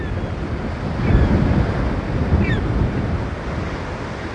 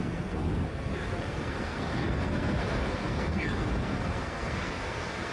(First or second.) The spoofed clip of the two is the second